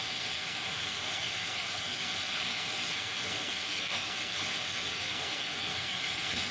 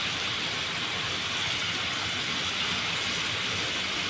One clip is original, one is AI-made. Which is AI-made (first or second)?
first